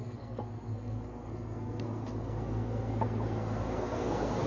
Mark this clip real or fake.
fake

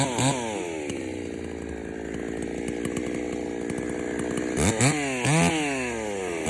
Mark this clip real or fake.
real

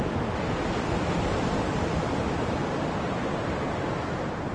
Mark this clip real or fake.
real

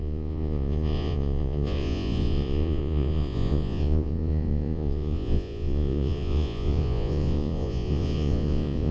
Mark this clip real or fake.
fake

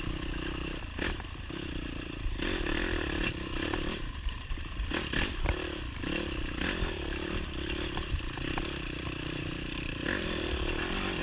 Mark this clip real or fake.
fake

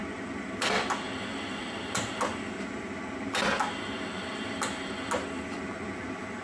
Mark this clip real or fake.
real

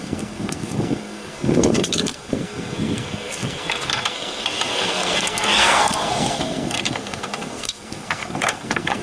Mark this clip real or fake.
fake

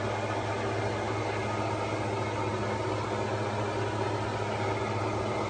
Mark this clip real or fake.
real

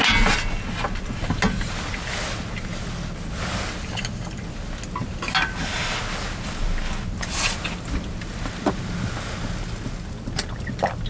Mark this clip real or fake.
real